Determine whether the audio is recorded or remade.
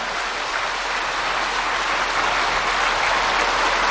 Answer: recorded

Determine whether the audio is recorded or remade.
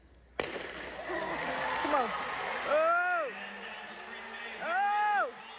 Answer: recorded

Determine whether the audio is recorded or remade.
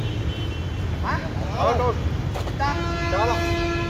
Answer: recorded